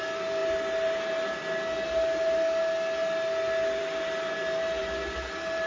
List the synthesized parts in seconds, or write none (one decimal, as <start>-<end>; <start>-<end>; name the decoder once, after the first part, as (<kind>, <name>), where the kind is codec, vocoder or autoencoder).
none